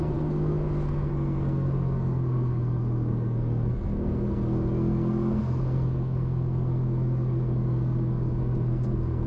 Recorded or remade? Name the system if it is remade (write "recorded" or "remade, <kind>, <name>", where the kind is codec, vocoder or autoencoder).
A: remade, codec, SNAC